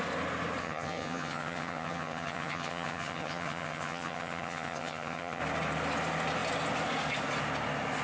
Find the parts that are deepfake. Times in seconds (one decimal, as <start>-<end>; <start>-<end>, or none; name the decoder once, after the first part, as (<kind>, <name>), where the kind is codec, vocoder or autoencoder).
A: 0.6-5.4 (vocoder, HiFi-GAN)